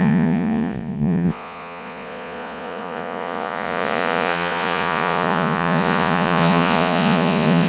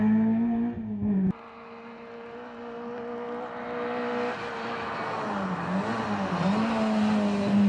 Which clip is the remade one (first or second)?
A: first